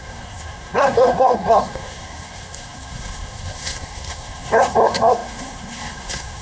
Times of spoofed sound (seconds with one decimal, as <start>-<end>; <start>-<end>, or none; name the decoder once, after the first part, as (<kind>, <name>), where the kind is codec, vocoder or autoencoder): 0.0-6.4 (codec, SNAC)